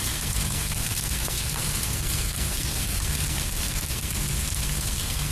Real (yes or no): no